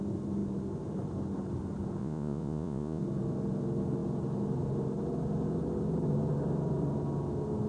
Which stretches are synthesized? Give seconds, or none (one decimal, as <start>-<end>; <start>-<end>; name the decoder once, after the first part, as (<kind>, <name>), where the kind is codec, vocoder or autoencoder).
2.0-3.0 (vocoder, Vocos)